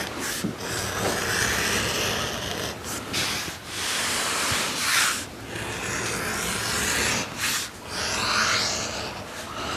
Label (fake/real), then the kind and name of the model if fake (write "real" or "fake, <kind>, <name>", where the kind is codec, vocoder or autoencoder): real